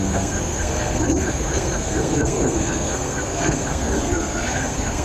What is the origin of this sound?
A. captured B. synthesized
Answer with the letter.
B